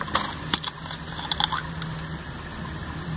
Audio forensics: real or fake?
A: real